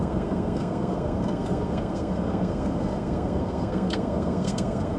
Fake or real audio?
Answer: fake